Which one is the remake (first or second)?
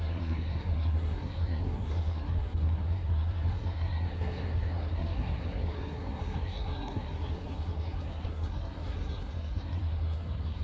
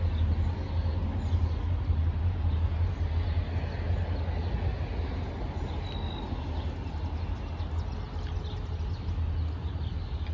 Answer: first